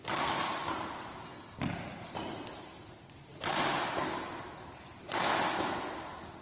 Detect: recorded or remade recorded